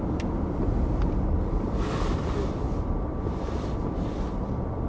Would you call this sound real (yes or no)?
yes